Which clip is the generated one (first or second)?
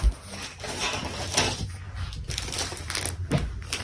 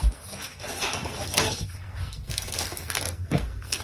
second